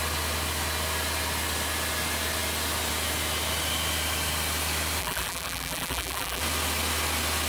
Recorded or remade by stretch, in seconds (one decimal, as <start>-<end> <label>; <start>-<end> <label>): 0.0-5.0 recorded; 5.0-6.4 remade; 6.4-7.5 recorded